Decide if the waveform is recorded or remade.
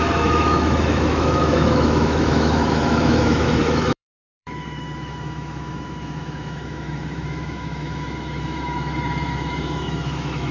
remade